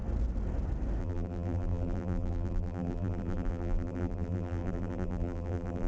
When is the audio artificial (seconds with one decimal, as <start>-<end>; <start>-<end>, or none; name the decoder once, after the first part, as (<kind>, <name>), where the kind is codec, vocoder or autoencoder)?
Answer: 1.0-5.9 (vocoder, BigVGAN v2)